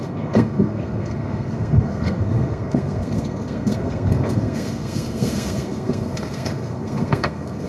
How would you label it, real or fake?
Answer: fake